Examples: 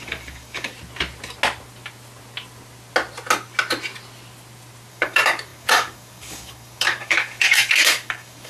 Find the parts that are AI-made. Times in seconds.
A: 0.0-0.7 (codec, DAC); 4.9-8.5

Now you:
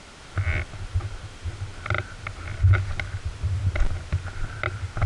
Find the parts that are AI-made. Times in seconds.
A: none

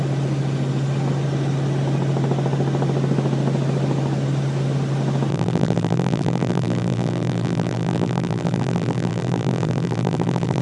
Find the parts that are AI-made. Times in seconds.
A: 5.3-10.6 (vocoder, BigVGAN v2)

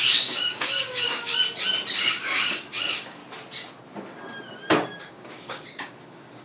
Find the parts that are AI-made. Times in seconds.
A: 0.0-1.3 (codec, DAC); 1.9-3.2; 5.1-6.4

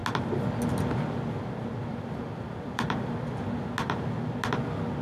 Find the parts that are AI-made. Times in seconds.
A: 1.9-3.2 (vocoder, BigVGAN v2)

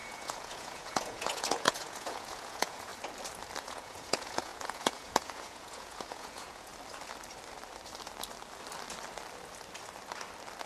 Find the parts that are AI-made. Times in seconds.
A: 0.0-2.9 (vocoder, Vocos); 3.6-6.7

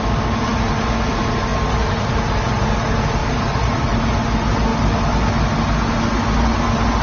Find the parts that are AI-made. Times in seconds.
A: 1.5-2.1 (vocoder, BigVGAN v2); 3.2-4.0